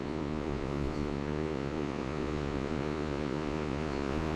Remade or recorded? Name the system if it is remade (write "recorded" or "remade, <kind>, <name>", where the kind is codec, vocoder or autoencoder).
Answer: remade, vocoder, Vocos